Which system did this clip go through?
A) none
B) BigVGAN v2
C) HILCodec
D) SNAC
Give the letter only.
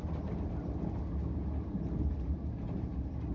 A